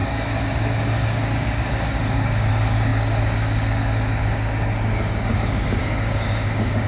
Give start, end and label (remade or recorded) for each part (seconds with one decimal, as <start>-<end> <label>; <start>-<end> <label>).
0.0-6.9 remade